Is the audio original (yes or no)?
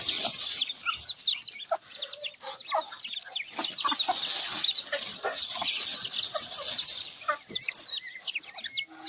yes